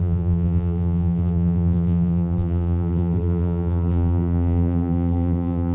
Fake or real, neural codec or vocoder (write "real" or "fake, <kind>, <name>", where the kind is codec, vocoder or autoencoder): fake, vocoder, BigVGAN v2